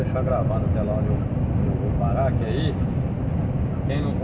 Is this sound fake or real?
real